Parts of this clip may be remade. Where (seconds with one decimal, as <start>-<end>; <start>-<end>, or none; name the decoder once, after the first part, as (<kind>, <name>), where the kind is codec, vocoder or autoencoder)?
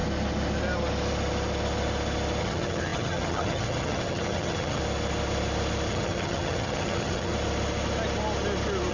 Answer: 2.4-4.8 (vocoder, HiFi-GAN); 5.9-7.3